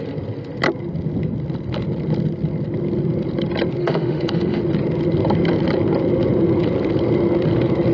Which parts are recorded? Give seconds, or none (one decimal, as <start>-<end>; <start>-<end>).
0.0-3.8; 4.6-7.9